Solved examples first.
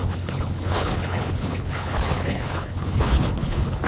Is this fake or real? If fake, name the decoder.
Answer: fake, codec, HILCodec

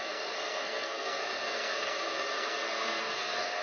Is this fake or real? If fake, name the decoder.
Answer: fake, codec, SNAC